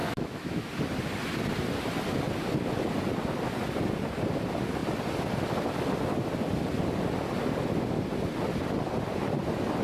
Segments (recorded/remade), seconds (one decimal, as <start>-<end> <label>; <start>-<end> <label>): 0.0-0.7 remade; 0.7-9.8 recorded